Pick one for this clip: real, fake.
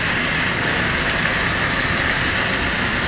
real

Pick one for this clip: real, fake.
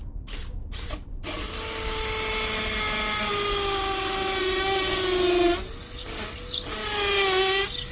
real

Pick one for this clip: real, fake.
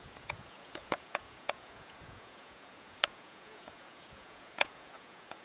fake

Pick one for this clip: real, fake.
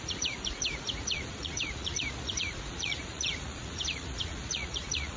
fake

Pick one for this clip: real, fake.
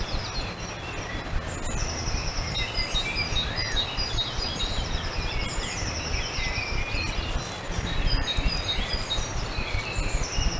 real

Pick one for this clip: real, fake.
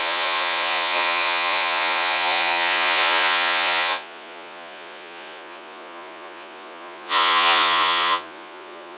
fake